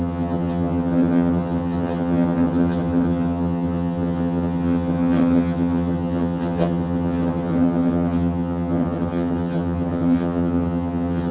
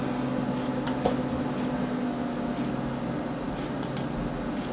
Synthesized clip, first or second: first